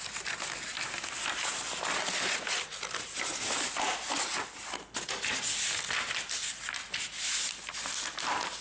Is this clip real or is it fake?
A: real